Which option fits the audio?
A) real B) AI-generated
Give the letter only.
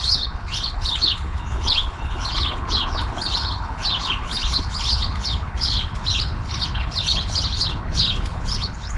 B